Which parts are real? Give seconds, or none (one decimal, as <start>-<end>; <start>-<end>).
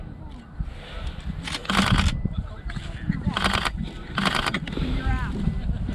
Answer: 0.0-5.9